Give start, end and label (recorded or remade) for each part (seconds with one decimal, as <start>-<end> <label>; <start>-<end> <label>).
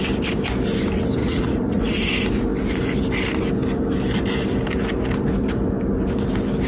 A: 0.0-1.2 recorded; 1.2-2.1 remade; 2.1-6.7 recorded